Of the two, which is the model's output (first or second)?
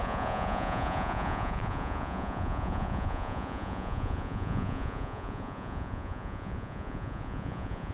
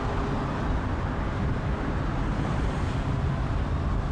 first